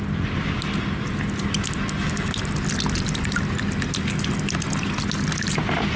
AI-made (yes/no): no